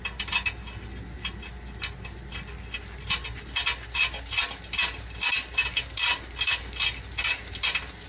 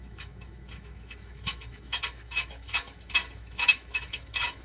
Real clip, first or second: first